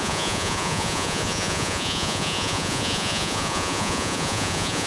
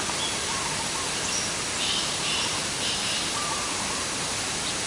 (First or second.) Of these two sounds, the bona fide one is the second